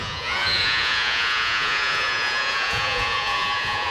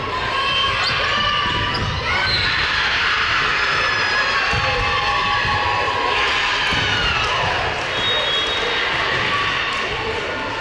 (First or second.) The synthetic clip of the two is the first